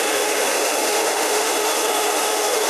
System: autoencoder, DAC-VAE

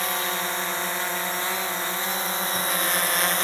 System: none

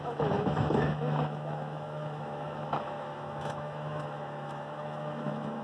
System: autoencoder, DAC-VAE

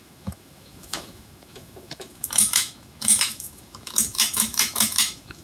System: autoencoder, DAC-VAE